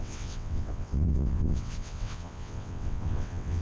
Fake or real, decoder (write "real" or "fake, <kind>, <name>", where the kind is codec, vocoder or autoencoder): fake, vocoder, WaveNeXt